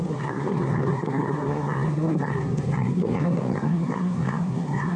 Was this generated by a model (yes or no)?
yes